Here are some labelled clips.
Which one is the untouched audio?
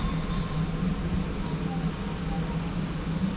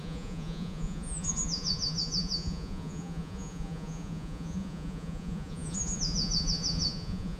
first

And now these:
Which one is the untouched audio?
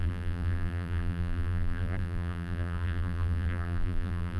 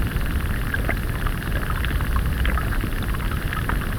second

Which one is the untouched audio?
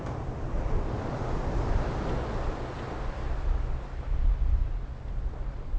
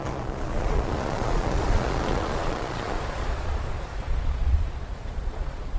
first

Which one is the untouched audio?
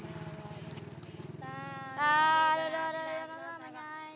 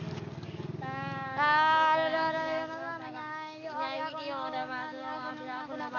first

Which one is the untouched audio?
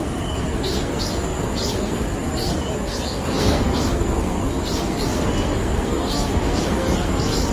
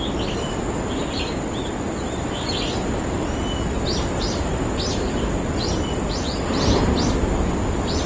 second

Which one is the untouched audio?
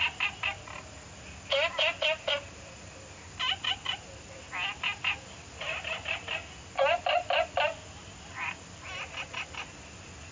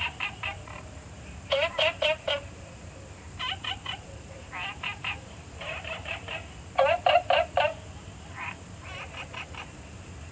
first